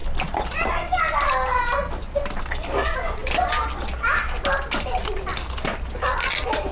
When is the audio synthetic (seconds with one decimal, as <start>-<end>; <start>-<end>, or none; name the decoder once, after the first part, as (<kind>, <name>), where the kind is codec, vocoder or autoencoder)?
none